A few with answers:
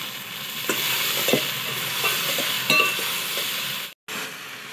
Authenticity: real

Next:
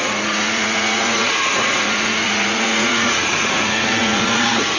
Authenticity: fake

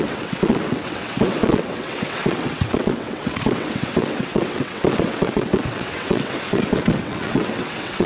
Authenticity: fake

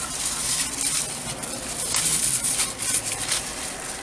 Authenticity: real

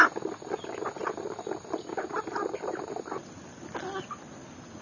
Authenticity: real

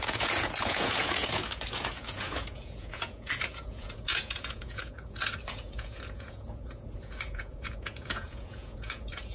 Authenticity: fake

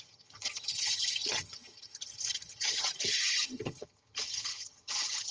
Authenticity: fake